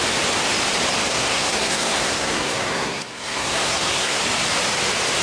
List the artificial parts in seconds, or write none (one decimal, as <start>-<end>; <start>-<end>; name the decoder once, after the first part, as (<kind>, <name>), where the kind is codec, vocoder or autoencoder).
1.1-4.2 (codec, SNAC)